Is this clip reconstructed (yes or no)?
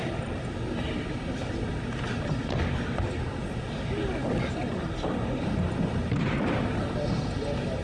no